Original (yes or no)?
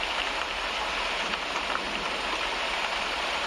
no